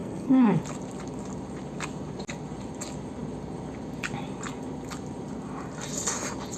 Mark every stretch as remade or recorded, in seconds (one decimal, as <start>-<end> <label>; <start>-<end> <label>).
0.0-0.6 remade; 0.6-6.6 recorded